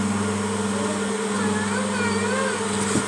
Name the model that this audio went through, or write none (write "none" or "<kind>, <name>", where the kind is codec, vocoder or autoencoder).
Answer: none